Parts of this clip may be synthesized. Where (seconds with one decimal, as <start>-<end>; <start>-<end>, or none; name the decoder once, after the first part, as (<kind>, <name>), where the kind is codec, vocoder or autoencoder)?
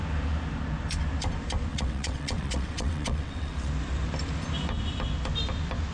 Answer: 1.7-3.7 (vocoder, WaveNeXt)